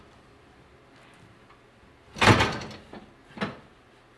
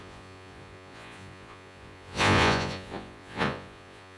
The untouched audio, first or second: first